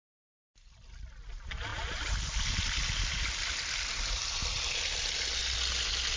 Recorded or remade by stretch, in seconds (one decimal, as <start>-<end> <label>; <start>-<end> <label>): 0.0-6.2 recorded